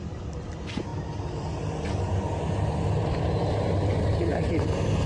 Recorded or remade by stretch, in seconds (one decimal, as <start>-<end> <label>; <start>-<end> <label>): 0.0-5.1 recorded